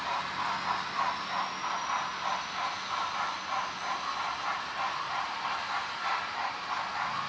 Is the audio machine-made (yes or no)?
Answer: no